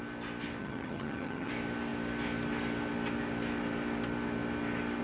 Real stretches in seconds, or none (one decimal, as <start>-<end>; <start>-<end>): 0.0-0.6; 1.5-5.0